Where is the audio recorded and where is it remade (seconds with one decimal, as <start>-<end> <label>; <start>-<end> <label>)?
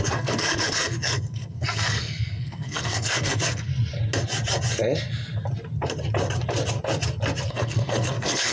0.0-3.7 remade; 3.7-7.5 recorded; 7.5-8.5 remade